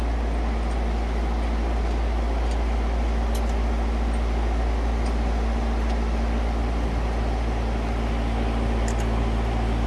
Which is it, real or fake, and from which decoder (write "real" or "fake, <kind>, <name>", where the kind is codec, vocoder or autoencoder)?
real